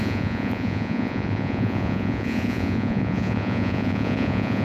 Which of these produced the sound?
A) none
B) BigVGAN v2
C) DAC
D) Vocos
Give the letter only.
D